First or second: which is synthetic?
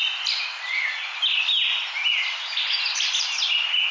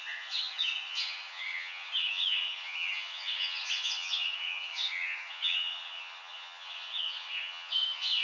second